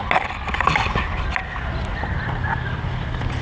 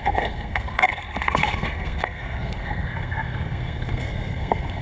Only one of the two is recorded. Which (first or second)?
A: first